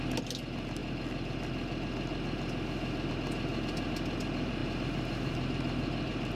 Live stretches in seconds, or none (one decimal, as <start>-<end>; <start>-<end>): 0.0-4.6